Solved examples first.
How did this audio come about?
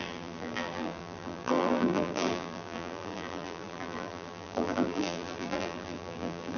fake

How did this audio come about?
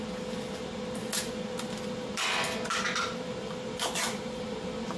real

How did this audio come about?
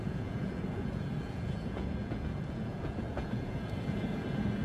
fake